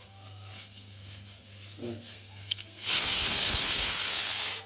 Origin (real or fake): fake